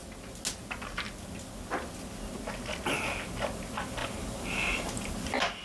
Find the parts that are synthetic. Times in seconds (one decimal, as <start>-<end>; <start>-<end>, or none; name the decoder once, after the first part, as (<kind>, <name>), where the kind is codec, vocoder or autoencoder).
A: 4.0-5.1 (vocoder, BigVGAN v2)